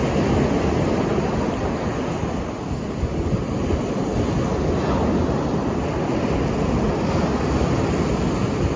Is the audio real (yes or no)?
yes